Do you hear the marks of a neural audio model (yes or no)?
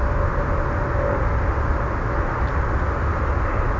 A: no